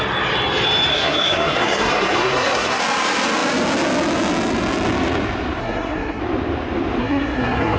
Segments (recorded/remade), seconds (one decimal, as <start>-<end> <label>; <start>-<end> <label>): 0.0-0.9 recorded; 0.9-2.8 remade; 2.8-5.6 recorded; 5.6-6.2 remade; 6.2-7.0 recorded; 7.0-7.8 remade